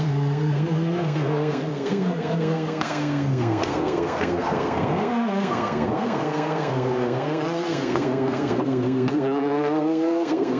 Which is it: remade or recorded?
remade